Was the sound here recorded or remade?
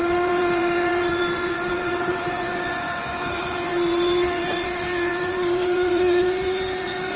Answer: remade